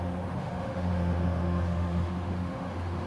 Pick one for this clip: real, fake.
fake